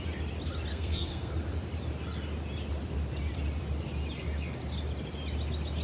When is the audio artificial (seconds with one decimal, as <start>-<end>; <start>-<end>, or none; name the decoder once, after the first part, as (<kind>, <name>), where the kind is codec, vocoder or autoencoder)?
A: 0.7-1.3 (codec, SNAC)